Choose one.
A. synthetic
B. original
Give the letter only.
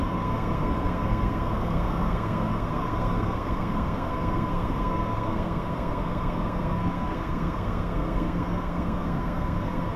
A